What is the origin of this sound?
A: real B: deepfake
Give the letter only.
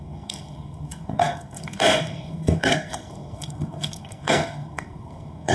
B